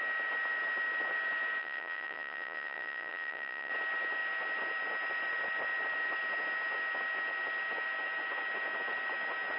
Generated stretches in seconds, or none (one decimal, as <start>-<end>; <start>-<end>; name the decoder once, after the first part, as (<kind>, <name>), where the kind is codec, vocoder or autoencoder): 1.6-3.7 (vocoder, WaveNeXt)